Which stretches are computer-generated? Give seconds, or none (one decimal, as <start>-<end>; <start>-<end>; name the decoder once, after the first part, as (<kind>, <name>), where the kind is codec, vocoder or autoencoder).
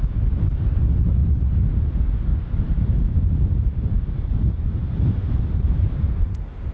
1.2-1.9 (vocoder, BigVGAN v2); 2.3-6.3